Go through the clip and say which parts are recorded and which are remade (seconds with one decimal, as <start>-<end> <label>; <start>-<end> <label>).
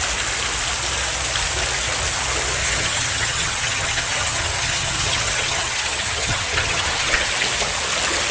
0.0-2.6 recorded; 2.6-7.3 remade; 7.3-8.3 recorded